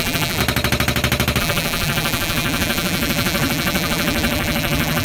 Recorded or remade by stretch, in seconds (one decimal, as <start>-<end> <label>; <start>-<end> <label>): 0.0-0.4 remade; 0.4-1.4 recorded; 1.4-5.0 remade